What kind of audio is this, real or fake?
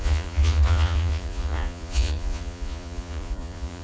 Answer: fake